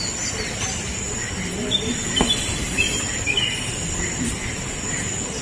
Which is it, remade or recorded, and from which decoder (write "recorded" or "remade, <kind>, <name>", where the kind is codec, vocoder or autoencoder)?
recorded